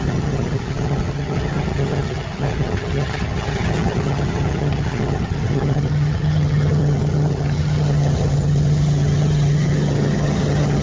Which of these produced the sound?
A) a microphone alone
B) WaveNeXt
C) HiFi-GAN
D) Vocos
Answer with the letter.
C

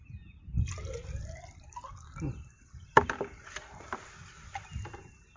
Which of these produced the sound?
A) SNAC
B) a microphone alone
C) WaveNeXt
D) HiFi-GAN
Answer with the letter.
B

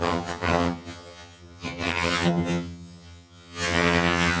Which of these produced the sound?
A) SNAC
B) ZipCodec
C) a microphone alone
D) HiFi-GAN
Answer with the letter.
D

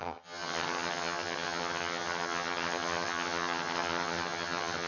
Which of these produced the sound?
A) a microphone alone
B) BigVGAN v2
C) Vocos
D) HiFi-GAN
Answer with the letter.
D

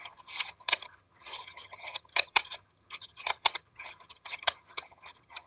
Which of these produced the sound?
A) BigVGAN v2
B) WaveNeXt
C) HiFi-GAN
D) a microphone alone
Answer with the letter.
C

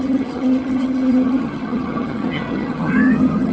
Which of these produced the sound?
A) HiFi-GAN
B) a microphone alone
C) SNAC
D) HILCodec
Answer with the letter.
A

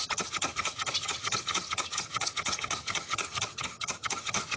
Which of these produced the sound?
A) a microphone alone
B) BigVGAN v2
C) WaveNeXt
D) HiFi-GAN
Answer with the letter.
D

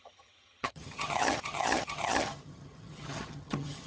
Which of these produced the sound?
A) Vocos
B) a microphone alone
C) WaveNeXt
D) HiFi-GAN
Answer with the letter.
D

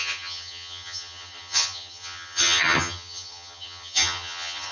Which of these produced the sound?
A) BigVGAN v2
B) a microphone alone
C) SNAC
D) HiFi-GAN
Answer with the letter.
D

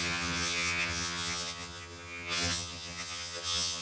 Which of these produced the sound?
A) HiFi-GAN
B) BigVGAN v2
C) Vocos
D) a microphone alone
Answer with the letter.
A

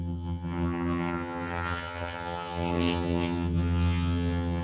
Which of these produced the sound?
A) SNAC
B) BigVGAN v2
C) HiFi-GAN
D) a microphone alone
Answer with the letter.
C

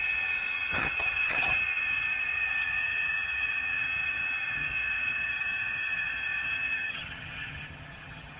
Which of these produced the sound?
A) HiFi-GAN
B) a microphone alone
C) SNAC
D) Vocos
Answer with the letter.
A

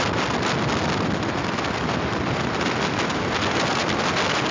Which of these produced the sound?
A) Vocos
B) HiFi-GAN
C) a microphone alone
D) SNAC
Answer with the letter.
C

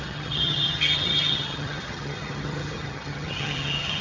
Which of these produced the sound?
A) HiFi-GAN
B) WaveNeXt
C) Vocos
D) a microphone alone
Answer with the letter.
A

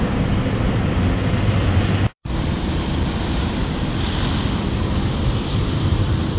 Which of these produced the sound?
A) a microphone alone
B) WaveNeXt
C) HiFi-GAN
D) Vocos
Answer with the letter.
A